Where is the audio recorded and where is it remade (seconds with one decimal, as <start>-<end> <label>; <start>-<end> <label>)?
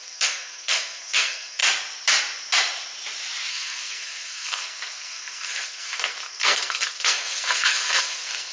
0.0-1.6 remade; 1.6-3.5 recorded; 3.5-8.5 remade